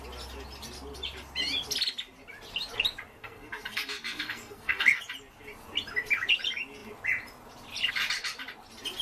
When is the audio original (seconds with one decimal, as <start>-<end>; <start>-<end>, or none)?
0.0-3.2; 5.0-9.0

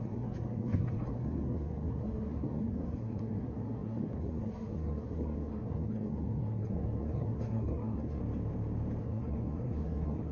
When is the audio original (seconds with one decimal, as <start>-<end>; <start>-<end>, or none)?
8.2-9.0

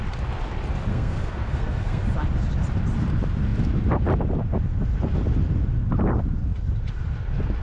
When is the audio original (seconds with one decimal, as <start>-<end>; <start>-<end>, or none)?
0.0-0.9; 2.0-7.6

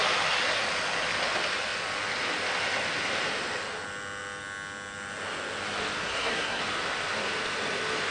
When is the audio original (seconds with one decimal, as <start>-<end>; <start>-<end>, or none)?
0.0-6.0; 6.6-8.1

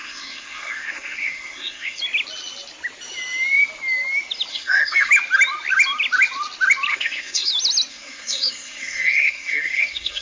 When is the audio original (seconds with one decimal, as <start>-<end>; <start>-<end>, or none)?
2.0-4.5; 5.1-6.9; 7.5-7.9

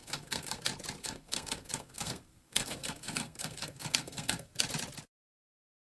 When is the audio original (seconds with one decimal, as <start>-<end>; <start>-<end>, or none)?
0.6-1.0; 4.5-5.9

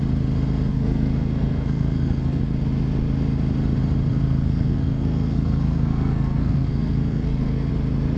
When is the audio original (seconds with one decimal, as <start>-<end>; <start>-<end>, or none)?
0.0-0.7; 2.4-4.1; 7.7-8.2

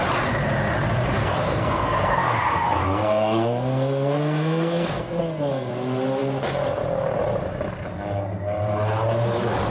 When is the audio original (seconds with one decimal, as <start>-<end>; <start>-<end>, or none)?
0.0-1.2; 5.7-9.7